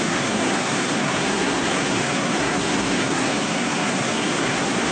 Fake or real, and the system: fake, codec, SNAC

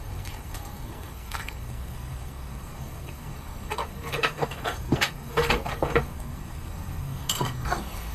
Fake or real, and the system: fake, codec, SNAC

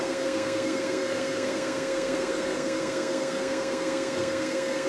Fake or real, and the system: fake, codec, SNAC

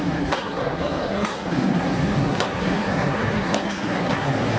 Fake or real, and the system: fake, codec, SNAC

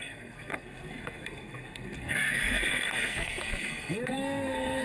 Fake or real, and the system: fake, codec, SNAC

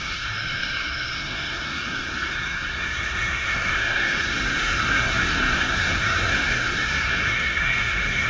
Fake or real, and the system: fake, codec, SNAC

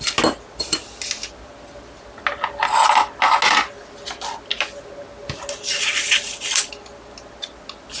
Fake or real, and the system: real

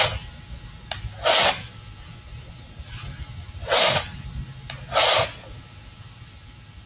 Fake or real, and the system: real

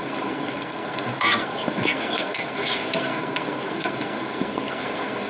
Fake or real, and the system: fake, codec, SNAC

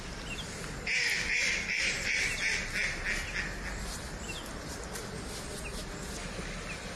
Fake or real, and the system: real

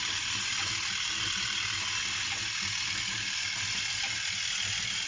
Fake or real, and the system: real